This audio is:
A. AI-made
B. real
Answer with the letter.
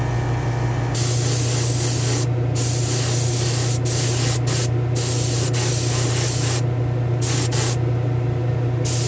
B